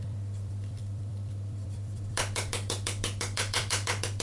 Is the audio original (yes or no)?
no